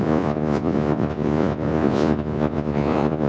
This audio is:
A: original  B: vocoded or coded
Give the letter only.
B